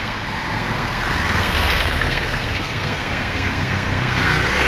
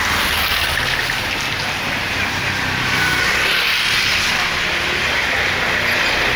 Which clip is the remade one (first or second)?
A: first